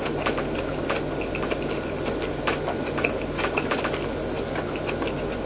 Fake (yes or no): no